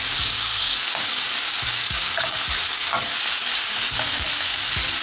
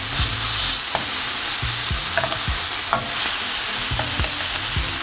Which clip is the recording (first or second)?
second